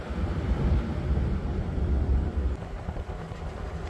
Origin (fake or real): real